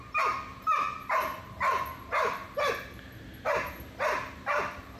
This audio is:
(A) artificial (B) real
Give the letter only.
B